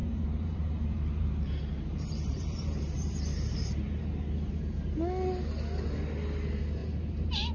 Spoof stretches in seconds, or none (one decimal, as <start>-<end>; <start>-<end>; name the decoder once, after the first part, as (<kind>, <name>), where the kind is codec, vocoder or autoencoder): 0.0-4.5 (vocoder, BigVGAN v2); 6.8-7.5